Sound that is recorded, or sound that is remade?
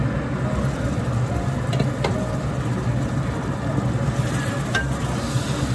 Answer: recorded